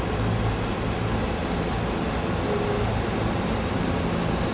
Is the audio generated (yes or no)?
no